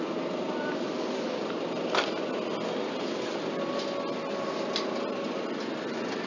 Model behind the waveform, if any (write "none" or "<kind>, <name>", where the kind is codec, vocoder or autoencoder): none